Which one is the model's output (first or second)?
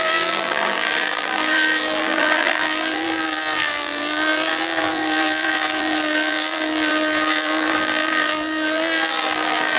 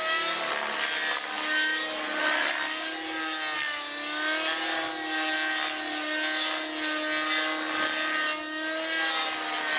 first